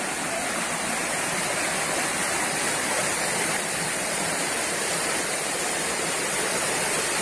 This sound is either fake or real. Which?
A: fake